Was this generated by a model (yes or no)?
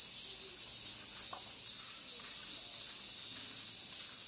no